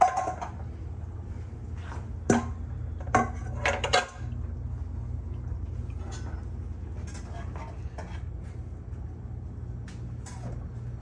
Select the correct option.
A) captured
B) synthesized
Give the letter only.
A